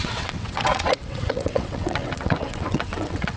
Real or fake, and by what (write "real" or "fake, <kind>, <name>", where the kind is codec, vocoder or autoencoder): fake, vocoder, WaveNeXt